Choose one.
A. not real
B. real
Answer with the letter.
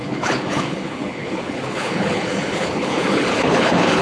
A